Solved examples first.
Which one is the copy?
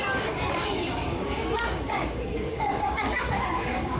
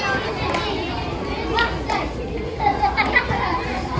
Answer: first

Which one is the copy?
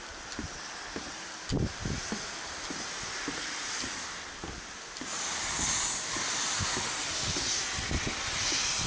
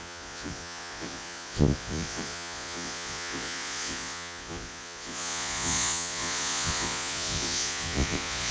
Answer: second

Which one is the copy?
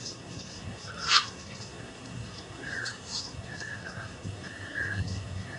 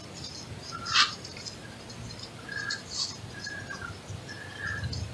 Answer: first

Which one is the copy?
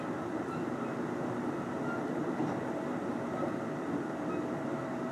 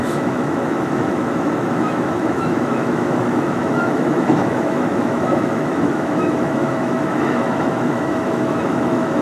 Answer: second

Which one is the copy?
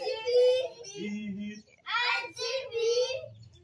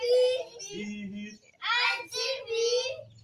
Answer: first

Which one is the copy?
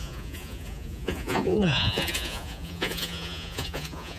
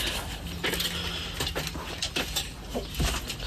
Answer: first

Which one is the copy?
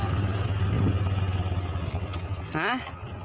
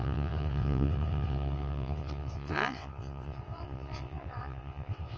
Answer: second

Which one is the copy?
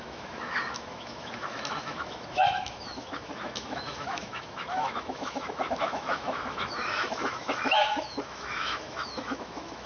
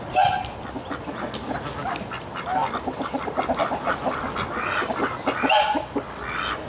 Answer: first